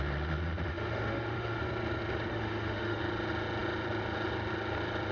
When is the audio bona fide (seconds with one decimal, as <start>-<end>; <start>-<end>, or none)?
0.0-0.7; 1.6-2.3; 3.0-5.1